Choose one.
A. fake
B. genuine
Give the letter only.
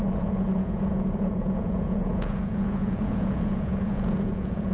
A